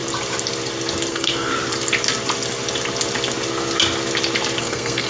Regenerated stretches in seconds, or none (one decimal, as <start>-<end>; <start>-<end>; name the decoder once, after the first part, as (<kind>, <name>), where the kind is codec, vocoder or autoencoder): 1.1-1.5 (codec, SNAC); 4.6-5.1